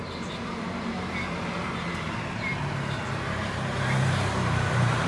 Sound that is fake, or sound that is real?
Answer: fake